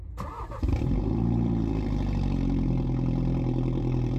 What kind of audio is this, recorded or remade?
remade